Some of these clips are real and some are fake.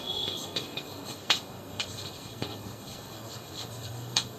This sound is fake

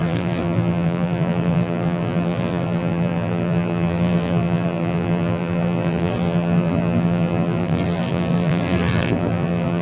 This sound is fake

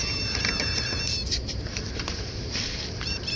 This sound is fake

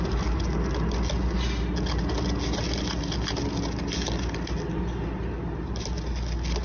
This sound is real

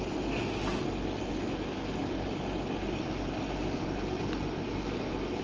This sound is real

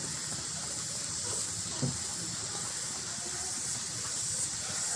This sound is real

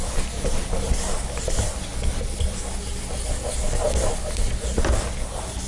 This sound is real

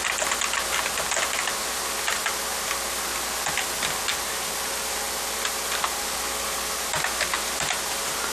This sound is real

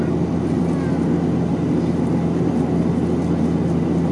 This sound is real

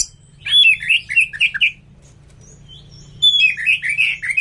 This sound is real